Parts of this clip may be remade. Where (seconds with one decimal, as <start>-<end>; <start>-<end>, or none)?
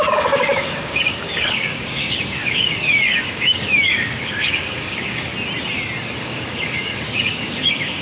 0.0-5.3; 6.2-8.0